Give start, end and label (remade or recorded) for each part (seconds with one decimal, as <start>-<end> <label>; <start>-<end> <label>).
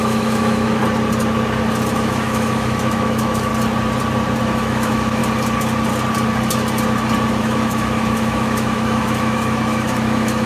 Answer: 0.0-0.8 remade; 0.8-1.9 recorded; 1.9-3.5 remade; 3.5-4.4 recorded; 4.4-5.2 remade; 5.2-7.4 recorded; 7.4-10.5 remade